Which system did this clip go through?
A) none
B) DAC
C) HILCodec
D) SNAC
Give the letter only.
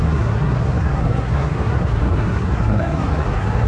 D